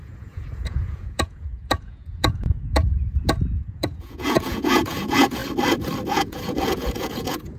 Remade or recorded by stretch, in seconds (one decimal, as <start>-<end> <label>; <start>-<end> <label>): 0.0-5.4 remade; 5.4-6.1 recorded; 6.1-7.6 remade